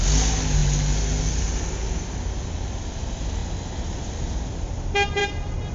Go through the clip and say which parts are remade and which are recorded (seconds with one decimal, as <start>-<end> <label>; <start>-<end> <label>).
0.0-5.7 recorded